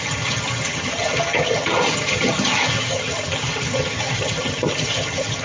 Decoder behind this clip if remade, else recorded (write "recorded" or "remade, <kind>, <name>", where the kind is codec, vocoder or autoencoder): remade, vocoder, HiFi-GAN